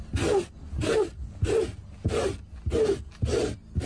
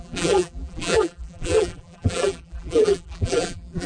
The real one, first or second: first